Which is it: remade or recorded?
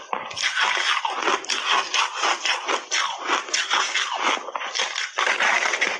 recorded